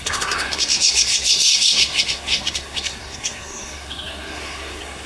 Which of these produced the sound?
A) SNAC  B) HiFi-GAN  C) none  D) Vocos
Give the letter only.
A